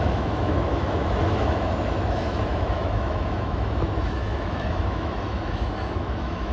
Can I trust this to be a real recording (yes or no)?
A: no